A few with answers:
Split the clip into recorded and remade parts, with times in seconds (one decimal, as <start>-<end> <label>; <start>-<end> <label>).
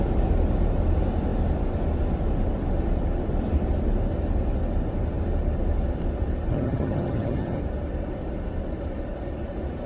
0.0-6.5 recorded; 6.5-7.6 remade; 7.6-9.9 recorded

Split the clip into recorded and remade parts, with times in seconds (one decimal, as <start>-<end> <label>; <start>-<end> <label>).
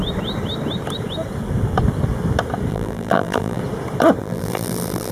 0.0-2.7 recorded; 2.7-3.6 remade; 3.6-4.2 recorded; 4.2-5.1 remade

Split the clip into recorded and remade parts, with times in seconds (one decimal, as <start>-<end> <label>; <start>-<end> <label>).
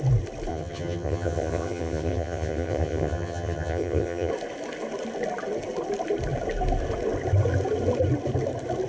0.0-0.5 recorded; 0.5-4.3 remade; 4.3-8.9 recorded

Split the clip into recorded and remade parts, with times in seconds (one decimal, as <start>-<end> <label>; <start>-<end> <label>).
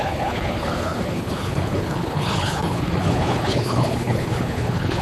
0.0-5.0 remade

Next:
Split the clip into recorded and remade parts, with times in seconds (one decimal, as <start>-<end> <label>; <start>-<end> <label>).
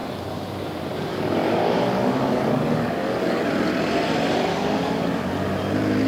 0.0-1.1 recorded; 1.1-3.5 remade; 3.5-4.5 recorded; 4.5-5.3 remade; 5.3-6.1 recorded